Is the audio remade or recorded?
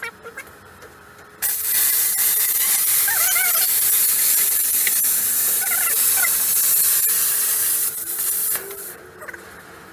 remade